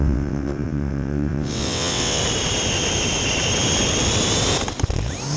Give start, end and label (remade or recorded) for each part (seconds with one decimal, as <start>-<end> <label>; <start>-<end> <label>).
0.0-2.2 remade; 2.2-5.4 recorded

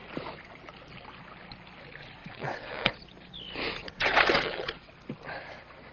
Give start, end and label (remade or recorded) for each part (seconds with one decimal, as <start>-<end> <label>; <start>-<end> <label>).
0.0-2.2 recorded; 2.2-2.9 remade; 2.9-3.8 recorded; 3.8-4.9 remade; 4.9-5.9 recorded

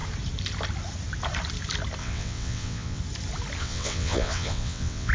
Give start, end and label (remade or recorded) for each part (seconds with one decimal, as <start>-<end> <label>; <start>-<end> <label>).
0.0-2.0 recorded; 2.0-3.0 remade; 3.0-3.6 recorded; 3.6-5.1 remade

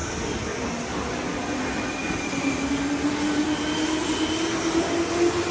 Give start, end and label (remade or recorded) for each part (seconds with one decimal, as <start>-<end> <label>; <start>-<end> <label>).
0.0-5.5 recorded

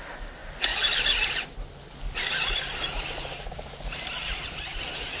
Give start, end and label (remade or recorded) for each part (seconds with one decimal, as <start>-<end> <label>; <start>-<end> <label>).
0.0-5.2 recorded